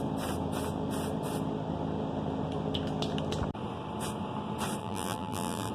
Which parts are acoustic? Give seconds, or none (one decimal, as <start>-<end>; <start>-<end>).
0.0-4.8